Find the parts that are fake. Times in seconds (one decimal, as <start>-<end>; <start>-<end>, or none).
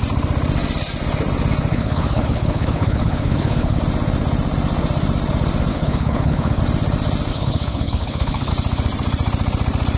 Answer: 1.7-3.8; 5.7-6.6; 7.3-8.5